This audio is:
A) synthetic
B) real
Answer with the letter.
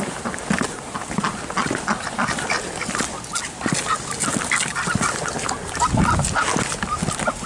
B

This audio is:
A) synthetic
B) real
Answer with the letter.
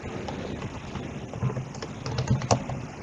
B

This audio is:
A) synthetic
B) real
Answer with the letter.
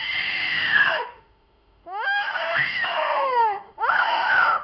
A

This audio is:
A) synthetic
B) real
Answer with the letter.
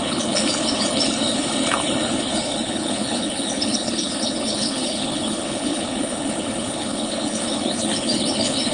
A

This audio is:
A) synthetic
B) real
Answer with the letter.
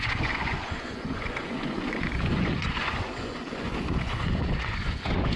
A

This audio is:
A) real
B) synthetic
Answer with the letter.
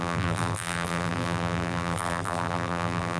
B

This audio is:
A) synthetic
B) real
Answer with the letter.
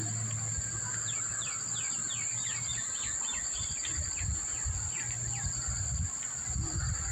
B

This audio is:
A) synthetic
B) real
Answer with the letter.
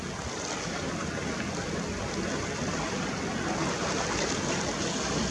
B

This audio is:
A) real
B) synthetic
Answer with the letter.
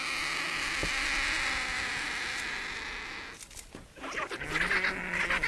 A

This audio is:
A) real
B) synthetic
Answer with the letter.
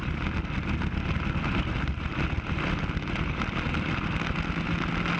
A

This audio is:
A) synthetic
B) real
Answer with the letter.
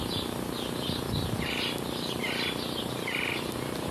B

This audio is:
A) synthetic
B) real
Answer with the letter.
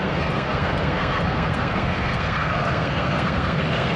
A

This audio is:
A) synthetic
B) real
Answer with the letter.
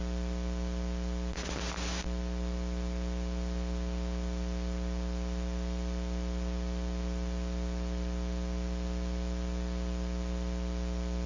B